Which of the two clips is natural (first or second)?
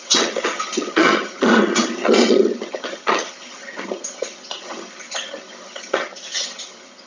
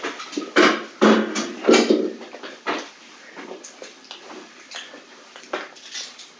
second